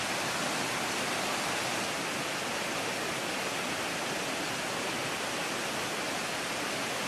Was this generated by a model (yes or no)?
no